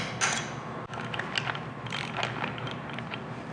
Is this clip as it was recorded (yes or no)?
yes